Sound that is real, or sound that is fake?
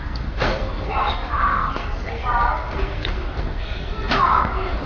fake